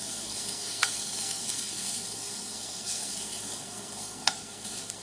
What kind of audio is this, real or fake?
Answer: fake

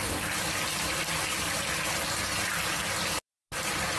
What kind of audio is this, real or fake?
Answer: real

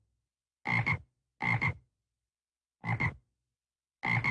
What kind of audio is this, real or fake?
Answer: real